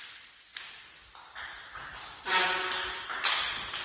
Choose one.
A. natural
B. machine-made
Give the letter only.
A